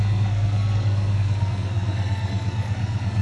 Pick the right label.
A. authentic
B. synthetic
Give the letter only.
B